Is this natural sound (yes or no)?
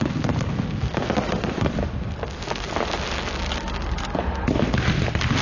yes